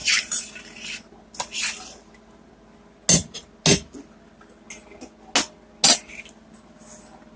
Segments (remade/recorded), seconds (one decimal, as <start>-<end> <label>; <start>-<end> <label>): 0.0-0.6 remade; 0.6-7.4 recorded